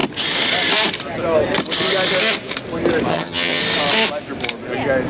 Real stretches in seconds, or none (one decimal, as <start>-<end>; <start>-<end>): 0.0-3.1; 3.6-5.1